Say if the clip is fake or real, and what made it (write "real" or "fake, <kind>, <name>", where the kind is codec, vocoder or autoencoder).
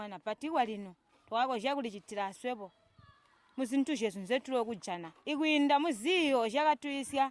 real